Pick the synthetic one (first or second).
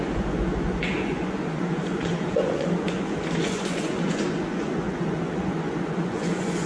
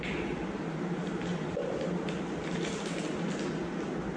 first